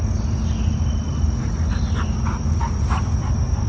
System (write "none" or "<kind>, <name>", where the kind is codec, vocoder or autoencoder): none